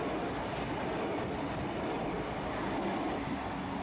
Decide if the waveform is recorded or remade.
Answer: recorded